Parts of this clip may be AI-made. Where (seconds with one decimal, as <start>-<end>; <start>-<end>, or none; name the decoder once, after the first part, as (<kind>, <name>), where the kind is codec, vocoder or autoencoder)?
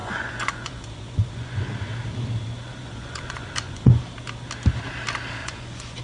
0.0-1.7 (vocoder, Vocos); 2.8-4.0; 5.4-6.0